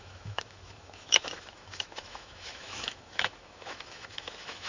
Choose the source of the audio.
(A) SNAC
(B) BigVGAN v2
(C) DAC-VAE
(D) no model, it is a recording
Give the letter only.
C